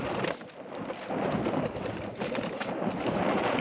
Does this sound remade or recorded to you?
recorded